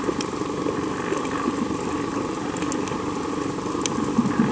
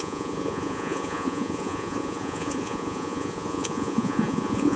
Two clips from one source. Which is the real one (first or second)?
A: first